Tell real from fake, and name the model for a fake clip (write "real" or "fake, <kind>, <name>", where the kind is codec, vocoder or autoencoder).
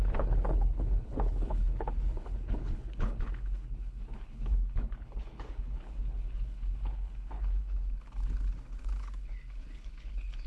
fake, codec, HILCodec